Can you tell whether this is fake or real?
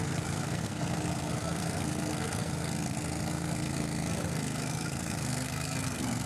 fake